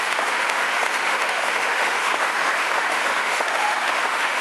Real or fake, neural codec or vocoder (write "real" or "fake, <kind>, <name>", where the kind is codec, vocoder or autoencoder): fake, autoencoder, DAC-VAE